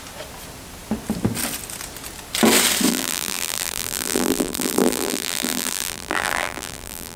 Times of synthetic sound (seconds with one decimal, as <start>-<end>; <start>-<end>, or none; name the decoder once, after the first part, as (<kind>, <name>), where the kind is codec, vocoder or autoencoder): 2.9-7.2 (vocoder, BigVGAN v2)